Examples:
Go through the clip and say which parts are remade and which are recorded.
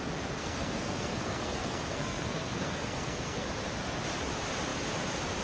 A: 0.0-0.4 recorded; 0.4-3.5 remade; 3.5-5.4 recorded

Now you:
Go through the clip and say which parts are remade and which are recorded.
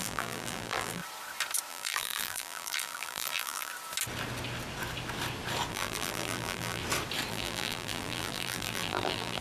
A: 0.0-1.0 remade; 1.0-1.7 recorded; 1.7-3.7 remade; 3.7-5.7 recorded; 5.7-6.8 remade; 6.8-7.3 recorded; 7.3-9.4 remade